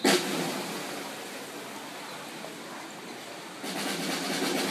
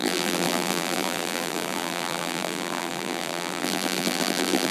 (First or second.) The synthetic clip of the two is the second